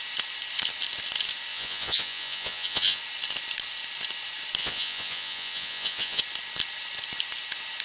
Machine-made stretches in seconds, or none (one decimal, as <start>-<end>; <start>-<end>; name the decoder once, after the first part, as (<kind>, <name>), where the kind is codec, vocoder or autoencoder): 1.5-3.0 (vocoder, Vocos); 4.6-6.2